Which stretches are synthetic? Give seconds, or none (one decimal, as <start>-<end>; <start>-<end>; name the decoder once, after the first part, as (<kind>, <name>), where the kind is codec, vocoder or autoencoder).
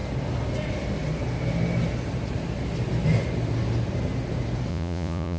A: 4.7-5.4 (vocoder, Vocos)